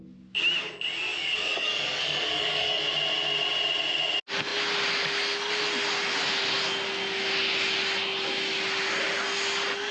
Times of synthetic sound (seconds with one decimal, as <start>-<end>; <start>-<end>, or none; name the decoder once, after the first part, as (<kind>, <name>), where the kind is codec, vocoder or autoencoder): 1.1-2.8 (codec, DAC)